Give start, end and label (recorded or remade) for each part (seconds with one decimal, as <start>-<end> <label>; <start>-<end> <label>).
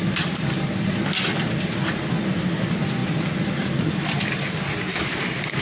0.0-5.6 recorded